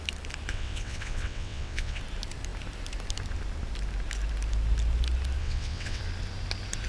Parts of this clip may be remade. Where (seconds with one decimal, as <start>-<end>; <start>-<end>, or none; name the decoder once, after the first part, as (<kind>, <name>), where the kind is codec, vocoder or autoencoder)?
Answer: 0.5-2.0 (vocoder, WaveNeXt); 5.4-6.0